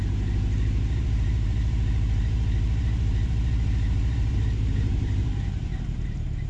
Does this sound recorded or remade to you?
remade